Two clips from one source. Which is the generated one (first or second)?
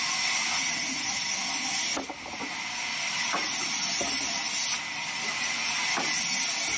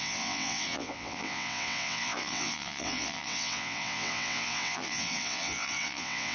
second